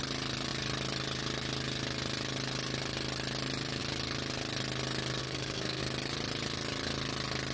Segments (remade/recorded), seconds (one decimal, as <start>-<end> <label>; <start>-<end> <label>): 0.0-5.2 recorded; 5.2-5.8 remade; 5.8-7.5 recorded